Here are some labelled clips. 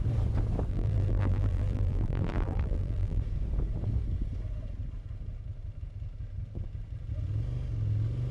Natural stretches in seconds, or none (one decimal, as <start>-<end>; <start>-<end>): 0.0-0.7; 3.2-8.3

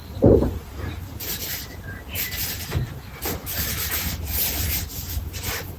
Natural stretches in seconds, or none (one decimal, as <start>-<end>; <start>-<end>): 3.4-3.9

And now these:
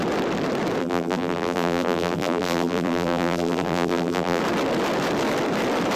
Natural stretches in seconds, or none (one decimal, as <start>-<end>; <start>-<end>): 0.0-0.8; 4.4-6.0